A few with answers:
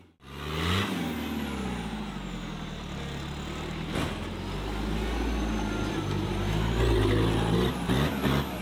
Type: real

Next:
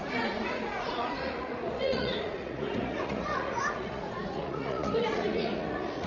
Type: fake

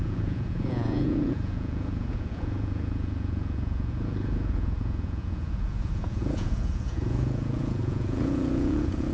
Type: fake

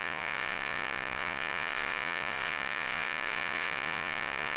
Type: fake